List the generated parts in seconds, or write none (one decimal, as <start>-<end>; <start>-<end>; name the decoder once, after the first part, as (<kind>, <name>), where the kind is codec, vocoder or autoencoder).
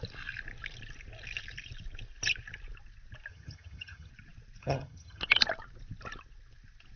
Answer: 3.3-4.1 (vocoder, HiFi-GAN); 4.6-5.2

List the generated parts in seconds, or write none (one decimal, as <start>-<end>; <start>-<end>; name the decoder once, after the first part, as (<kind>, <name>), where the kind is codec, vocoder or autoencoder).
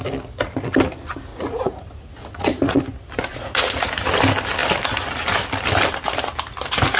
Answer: 1.3-2.8 (vocoder, Vocos); 3.3-3.9